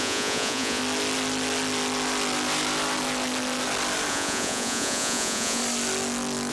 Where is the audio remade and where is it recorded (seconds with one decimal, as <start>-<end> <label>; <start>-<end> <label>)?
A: 0.0-0.8 remade; 0.8-4.1 recorded; 4.1-5.6 remade; 5.6-6.5 recorded